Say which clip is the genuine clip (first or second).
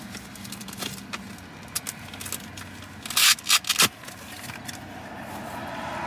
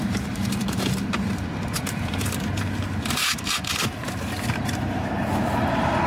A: first